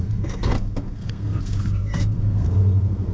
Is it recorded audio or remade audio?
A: remade